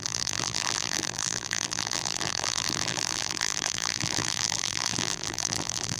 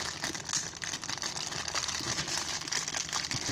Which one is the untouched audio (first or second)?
second